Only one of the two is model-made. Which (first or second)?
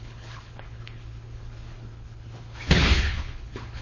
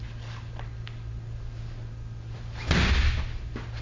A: first